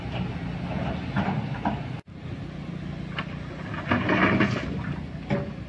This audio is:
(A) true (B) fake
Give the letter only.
A